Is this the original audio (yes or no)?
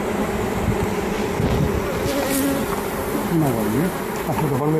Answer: yes